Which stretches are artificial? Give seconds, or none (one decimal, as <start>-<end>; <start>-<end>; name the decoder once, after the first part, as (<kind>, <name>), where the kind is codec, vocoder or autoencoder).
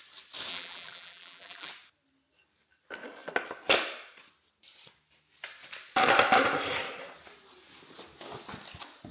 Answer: 0.5-1.7 (vocoder, BigVGAN v2)